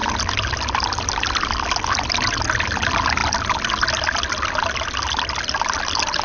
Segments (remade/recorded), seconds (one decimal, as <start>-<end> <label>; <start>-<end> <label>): 0.0-6.2 recorded